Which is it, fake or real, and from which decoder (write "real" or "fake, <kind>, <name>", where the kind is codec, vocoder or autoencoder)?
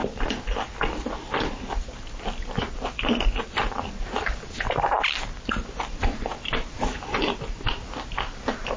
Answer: real